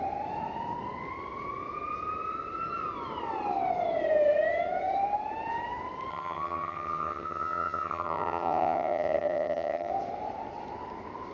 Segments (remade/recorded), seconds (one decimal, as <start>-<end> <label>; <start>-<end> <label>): 0.0-6.1 recorded; 6.1-9.9 remade; 9.9-11.3 recorded